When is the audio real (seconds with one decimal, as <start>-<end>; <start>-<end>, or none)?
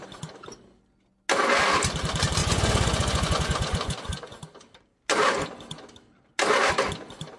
0.0-2.4; 4.4-7.4